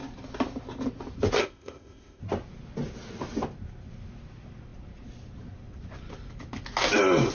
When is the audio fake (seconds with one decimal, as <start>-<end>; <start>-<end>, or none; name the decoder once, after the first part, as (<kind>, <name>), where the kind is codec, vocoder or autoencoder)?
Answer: 1.4-2.2 (codec, ZipCodec)